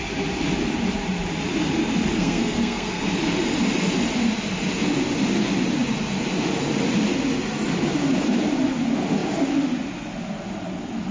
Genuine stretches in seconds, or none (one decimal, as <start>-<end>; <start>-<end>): 0.0-2.1; 3.0-11.1